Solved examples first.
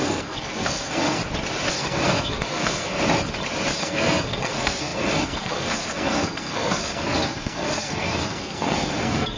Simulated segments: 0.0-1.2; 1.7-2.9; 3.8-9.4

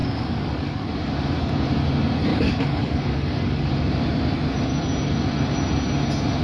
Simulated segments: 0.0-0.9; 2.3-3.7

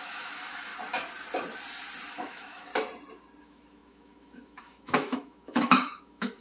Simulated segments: 0.0-0.7; 2.1-2.7; 3.4-6.4

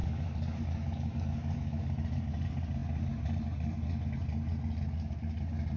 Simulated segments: 0.0-1.9

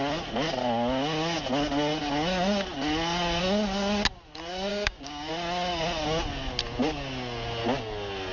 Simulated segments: 4.7-5.3

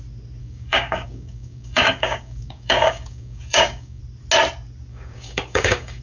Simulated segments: 0.4-4.0; 4.9-6.0

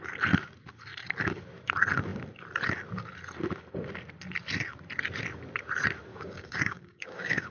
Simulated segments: 6.1-7.5

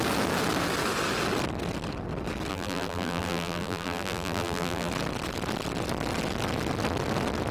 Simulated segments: 2.5-4.9